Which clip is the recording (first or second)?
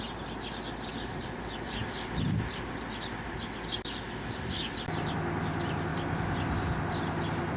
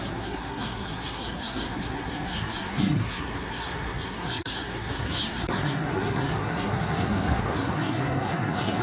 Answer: first